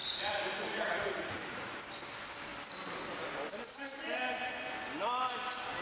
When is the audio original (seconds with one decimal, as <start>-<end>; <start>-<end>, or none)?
1.8-5.8